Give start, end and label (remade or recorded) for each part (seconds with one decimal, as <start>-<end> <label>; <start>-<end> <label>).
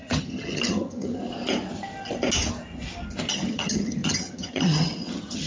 0.0-1.2 remade; 1.2-3.3 recorded; 3.3-5.5 remade